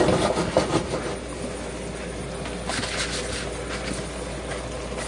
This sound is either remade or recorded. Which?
recorded